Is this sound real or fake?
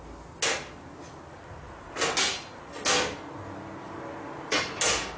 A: real